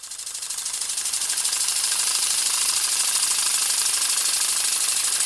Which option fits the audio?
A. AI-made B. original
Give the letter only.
B